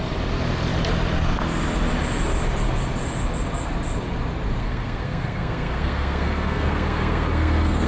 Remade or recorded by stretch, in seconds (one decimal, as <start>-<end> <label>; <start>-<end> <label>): 0.0-4.6 recorded; 4.6-7.9 remade